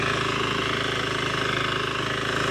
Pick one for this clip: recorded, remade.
recorded